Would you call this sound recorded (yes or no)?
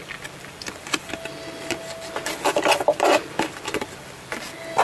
no